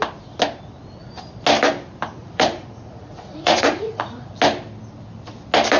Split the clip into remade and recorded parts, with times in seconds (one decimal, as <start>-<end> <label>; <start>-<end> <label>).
0.0-2.2 recorded; 2.2-4.3 remade; 4.3-5.8 recorded